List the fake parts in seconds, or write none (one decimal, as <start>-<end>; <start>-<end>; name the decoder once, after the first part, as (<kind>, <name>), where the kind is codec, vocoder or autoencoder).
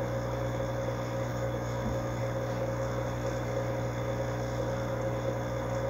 1.3-2.2 (autoencoder, DAC-VAE)